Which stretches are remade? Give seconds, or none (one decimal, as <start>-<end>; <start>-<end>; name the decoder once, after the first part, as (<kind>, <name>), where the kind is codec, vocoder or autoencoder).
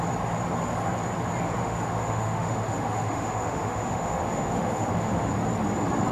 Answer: 1.6-5.3 (autoencoder, DAC-VAE)